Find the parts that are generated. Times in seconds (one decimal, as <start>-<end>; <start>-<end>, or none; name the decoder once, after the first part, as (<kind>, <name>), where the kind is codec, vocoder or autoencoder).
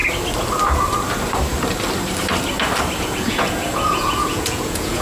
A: 3.0-5.0 (vocoder, Vocos)